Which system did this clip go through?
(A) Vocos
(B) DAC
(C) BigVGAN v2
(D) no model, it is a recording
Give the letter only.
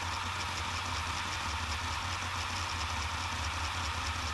D